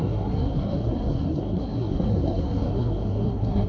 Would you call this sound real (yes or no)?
no